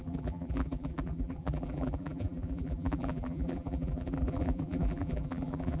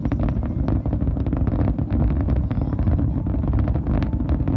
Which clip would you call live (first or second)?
second